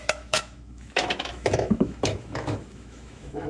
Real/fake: fake